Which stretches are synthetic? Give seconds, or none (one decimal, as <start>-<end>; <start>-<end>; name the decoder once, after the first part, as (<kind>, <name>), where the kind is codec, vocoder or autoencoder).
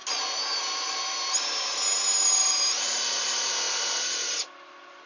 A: none